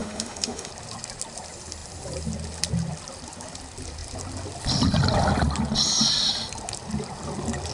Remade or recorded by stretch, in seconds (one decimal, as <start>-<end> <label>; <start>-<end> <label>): 0.0-0.7 remade; 0.7-7.7 recorded